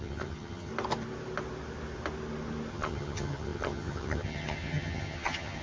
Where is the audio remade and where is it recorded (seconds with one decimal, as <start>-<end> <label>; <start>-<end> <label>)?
0.0-0.7 remade; 0.7-2.7 recorded; 2.7-5.6 remade